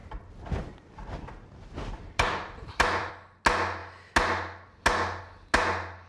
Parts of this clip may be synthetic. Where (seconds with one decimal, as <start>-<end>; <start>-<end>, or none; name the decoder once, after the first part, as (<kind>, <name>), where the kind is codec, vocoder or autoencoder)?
0.0-3.1 (vocoder, BigVGAN v2)